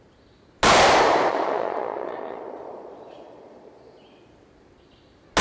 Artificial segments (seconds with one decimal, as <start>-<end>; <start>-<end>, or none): 1.3-4.2